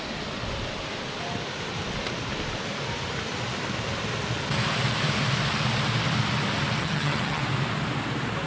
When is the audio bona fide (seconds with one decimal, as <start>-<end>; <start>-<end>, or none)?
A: 0.0-6.8; 7.4-8.5